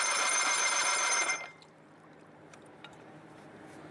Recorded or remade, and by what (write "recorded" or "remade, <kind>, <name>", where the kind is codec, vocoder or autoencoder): remade, vocoder, BigVGAN v2